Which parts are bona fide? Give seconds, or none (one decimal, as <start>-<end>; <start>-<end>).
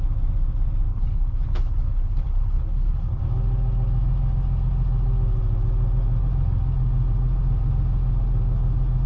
0.0-0.9; 3.2-9.1